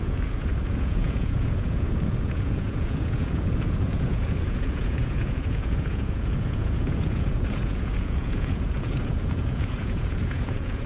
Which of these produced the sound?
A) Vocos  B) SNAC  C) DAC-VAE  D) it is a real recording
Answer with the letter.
A